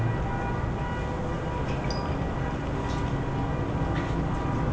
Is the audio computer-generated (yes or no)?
no